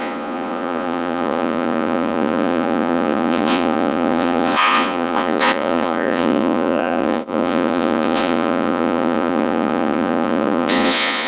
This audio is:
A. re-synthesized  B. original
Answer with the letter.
A